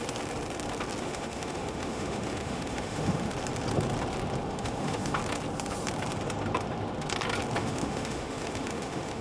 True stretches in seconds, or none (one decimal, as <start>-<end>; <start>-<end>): 0.0-1.0; 3.3-4.5; 5.2-7.6